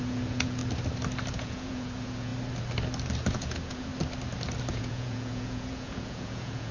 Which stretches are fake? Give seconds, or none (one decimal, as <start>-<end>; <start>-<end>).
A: 0.0-0.6; 1.3-2.3; 3.3-3.9; 4.7-6.7